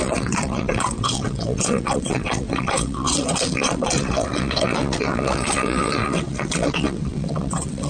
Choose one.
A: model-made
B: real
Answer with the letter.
A